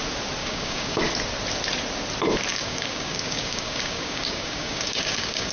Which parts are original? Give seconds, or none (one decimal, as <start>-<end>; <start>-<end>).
0.0-0.4; 1.0-2.5

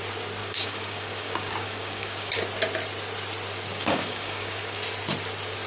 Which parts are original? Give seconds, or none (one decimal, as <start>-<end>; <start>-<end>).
0.0-0.4; 2.4-3.7; 4.6-5.7